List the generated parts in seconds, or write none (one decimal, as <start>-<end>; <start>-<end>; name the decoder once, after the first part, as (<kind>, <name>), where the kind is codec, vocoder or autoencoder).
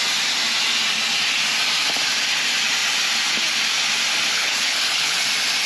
4.3-5.2 (codec, HILCodec)